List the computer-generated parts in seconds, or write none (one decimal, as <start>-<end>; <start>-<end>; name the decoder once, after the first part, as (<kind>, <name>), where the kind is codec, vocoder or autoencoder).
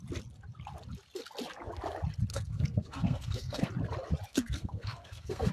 2.3-3.7 (codec, SNAC); 4.3-5.5